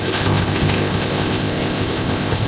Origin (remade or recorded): remade